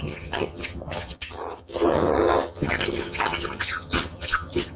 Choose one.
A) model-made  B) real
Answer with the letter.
A